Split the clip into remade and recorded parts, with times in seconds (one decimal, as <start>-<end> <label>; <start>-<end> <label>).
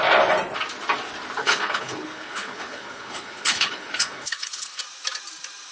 0.0-1.4 recorded; 1.4-4.8 remade; 4.8-5.7 recorded